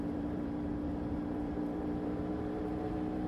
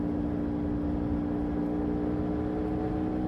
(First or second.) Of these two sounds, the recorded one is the second